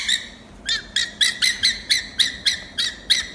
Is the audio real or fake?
real